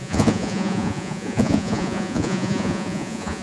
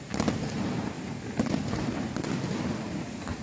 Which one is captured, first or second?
second